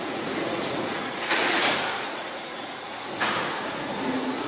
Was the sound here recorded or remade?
remade